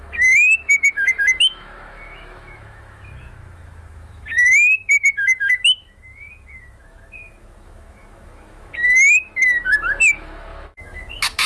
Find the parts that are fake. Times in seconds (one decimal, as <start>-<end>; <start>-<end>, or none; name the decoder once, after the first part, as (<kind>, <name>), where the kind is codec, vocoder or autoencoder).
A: 0.0-11.5 (autoencoder, DAC-VAE)